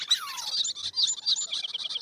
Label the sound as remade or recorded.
recorded